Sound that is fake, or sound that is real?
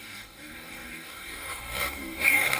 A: fake